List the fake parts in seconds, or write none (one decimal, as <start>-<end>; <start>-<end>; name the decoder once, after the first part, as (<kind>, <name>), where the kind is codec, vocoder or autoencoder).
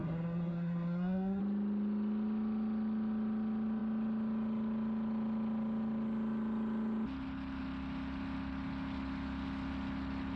0.0-1.4 (codec, SNAC)